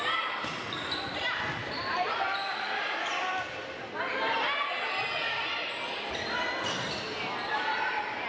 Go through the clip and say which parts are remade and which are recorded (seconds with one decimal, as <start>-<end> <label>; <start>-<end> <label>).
0.0-1.6 recorded; 1.6-3.1 remade; 3.1-8.3 recorded